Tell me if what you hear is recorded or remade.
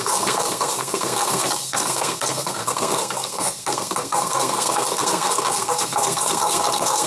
remade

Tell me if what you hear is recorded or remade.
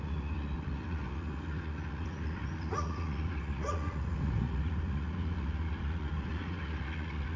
remade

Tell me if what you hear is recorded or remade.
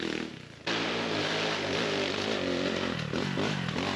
recorded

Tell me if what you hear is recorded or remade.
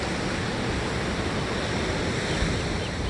recorded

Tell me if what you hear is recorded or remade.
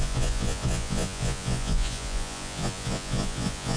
remade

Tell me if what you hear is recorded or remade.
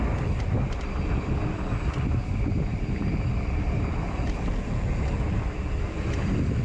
recorded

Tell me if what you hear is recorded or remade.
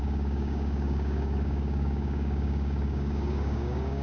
remade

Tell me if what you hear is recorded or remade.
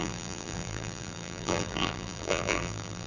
remade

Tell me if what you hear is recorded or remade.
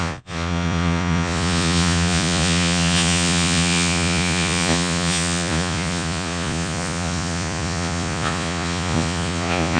remade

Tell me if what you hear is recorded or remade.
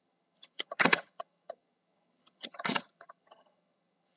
remade